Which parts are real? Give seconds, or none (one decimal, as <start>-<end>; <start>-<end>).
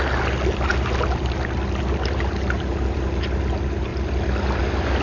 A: 0.0-5.0